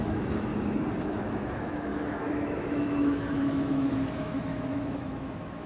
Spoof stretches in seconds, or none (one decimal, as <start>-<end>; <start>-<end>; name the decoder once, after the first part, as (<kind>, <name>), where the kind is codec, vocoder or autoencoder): 0.0-0.5 (autoencoder, DAC-VAE); 1.0-5.7